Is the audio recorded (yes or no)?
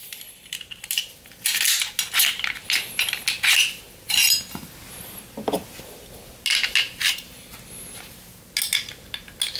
yes